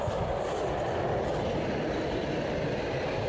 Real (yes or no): yes